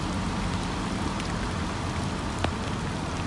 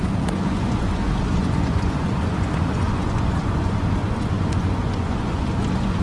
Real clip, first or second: first